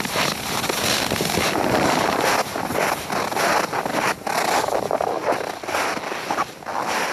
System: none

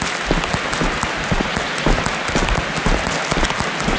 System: none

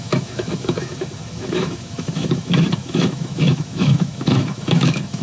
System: autoencoder, DAC-VAE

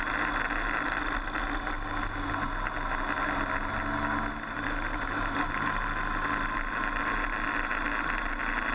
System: none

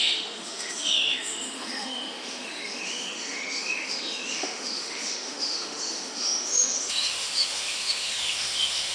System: autoencoder, DAC-VAE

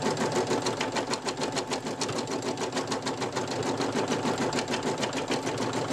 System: none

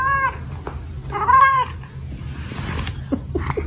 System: none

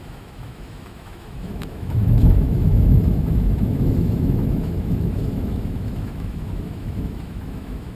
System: autoencoder, DAC-VAE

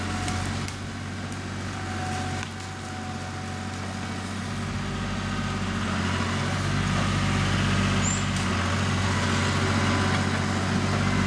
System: none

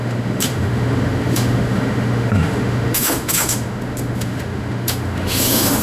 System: autoencoder, DAC-VAE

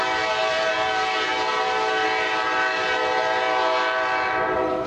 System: none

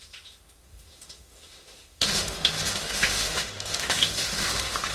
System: autoencoder, DAC-VAE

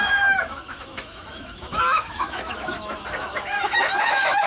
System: autoencoder, DAC-VAE